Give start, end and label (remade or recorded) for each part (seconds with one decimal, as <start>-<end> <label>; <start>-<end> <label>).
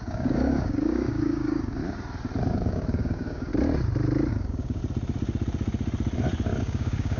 0.0-1.8 remade; 1.8-2.5 recorded; 2.5-3.5 remade; 3.5-4.3 recorded; 4.3-4.8 remade; 4.8-6.6 recorded; 6.6-7.2 remade